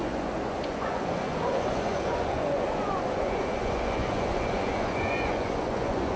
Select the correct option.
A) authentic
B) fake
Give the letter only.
B